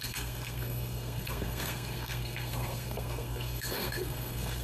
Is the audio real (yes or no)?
no